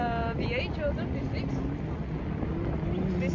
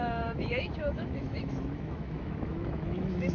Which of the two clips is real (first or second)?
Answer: first